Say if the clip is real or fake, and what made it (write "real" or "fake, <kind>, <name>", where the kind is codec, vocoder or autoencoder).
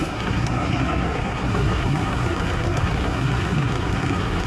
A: fake, codec, SNAC